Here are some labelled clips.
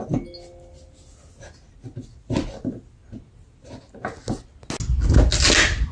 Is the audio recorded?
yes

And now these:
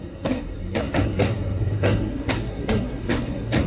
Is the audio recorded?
no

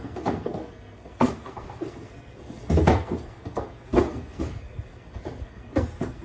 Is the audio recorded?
no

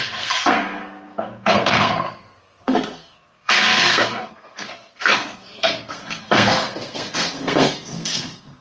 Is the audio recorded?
no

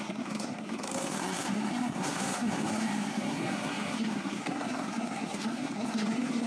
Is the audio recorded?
no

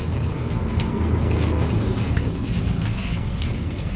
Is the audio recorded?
no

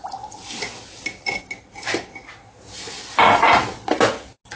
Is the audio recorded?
yes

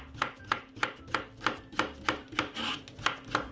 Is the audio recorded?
yes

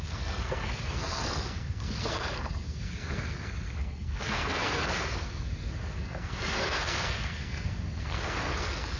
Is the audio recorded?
no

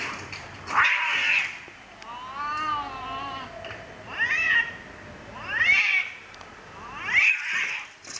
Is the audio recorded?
yes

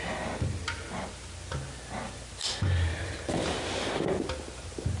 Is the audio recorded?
yes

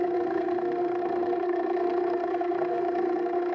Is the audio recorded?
no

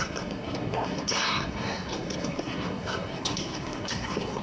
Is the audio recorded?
no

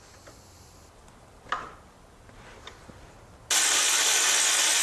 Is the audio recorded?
yes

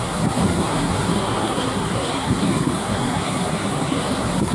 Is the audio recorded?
no